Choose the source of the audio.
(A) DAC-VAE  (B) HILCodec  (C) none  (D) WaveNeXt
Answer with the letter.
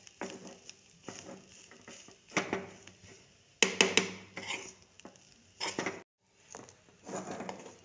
C